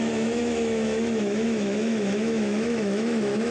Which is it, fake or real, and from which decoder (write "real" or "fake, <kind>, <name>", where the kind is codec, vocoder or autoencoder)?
fake, autoencoder, DAC-VAE